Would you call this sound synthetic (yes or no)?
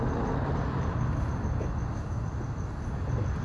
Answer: no